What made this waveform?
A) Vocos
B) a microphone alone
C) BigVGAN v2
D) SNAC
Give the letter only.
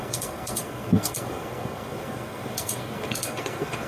D